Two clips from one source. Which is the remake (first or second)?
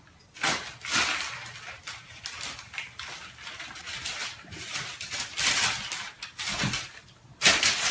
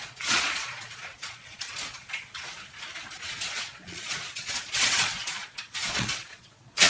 second